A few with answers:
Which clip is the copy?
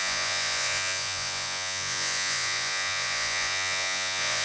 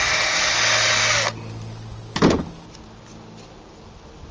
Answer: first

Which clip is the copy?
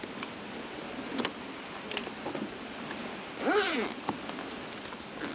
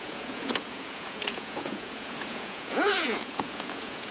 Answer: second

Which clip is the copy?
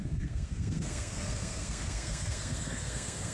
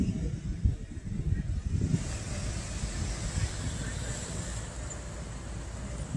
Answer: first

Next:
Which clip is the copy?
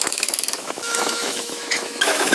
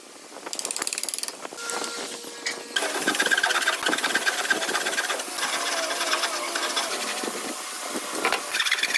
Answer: first